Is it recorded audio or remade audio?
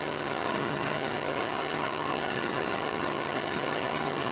remade